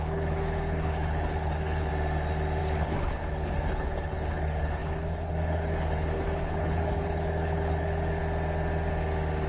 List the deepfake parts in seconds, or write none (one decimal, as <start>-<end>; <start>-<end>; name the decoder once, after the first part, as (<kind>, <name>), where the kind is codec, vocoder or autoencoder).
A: 0.0-1.9 (codec, HILCodec); 2.6-8.2